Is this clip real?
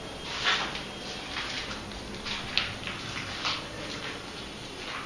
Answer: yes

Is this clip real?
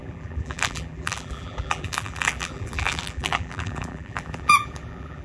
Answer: no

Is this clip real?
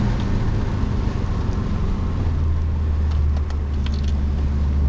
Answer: yes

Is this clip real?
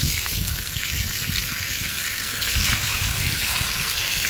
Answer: no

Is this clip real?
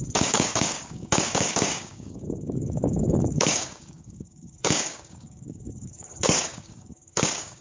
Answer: no